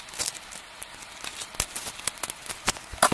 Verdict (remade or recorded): recorded